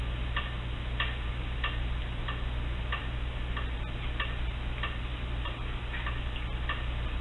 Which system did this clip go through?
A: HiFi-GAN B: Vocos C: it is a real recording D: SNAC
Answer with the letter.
C